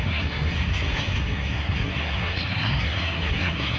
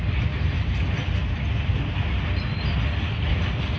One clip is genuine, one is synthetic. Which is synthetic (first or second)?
first